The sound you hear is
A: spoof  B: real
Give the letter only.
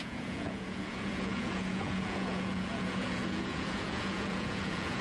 A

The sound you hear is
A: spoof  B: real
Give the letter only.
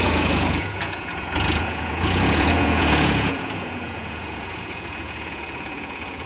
A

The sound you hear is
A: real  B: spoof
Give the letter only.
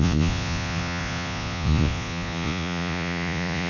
B